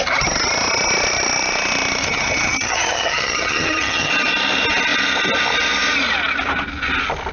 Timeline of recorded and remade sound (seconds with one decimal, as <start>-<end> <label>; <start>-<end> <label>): 0.0-2.0 recorded; 2.0-4.1 remade; 4.1-7.3 recorded